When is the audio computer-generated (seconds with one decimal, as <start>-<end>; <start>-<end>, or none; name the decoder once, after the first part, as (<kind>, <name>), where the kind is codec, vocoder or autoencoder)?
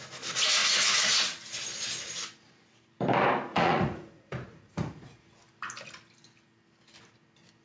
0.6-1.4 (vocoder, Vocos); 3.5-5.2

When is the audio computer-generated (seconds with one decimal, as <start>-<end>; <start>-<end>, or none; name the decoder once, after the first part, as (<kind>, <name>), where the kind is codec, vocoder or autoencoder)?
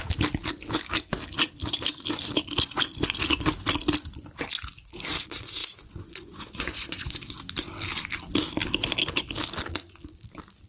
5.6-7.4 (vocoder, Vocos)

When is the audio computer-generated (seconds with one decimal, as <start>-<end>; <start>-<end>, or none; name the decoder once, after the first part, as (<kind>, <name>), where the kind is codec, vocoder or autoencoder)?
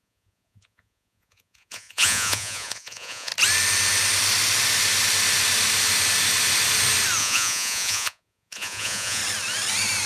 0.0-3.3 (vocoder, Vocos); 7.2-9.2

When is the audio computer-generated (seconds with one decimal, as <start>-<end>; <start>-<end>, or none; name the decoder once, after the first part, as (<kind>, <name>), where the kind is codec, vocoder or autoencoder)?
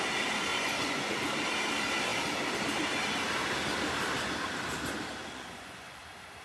0.5-1.2 (vocoder, Vocos); 5.2-6.0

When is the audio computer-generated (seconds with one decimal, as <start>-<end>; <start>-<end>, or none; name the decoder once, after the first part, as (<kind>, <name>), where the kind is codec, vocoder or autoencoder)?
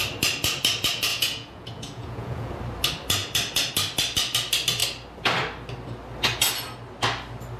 1.1-2.5 (vocoder, Vocos)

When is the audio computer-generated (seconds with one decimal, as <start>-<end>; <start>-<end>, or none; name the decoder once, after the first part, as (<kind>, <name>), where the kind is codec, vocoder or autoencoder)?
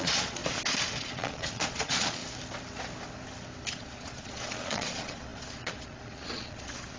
0.0-0.4 (vocoder, Vocos); 1.0-2.2; 3.7-7.0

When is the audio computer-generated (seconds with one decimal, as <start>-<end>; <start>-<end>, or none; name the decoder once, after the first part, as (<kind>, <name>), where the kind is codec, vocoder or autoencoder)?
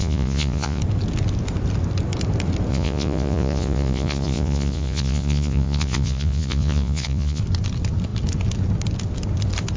0.0-0.8 (vocoder, Vocos); 2.7-7.4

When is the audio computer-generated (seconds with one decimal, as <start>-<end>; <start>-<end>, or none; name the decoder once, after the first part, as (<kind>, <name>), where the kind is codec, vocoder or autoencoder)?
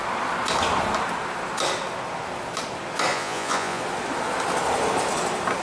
3.1-3.8 (vocoder, Vocos)